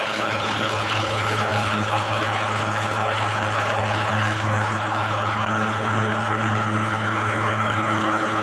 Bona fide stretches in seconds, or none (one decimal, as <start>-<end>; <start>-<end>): none